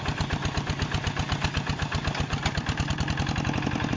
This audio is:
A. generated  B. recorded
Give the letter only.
B